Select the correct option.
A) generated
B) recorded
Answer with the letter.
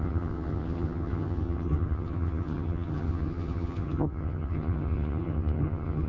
A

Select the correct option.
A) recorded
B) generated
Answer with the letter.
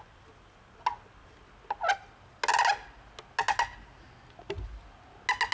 A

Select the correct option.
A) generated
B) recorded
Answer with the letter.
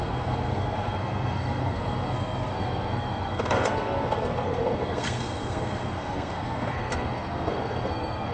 A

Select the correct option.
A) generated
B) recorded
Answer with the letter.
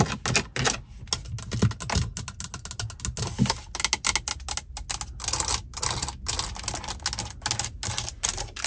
B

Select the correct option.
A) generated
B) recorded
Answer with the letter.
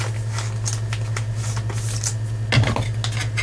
B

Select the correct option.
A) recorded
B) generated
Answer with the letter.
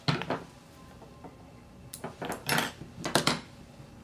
A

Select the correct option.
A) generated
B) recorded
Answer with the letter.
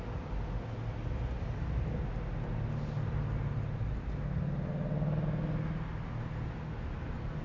B